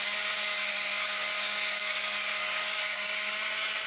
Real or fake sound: fake